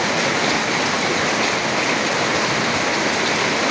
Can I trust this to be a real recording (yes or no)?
yes